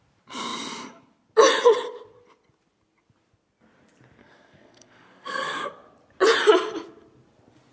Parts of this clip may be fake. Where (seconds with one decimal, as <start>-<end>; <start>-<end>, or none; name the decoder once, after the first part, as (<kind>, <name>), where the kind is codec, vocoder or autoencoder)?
4.2-5.7 (codec, SNAC)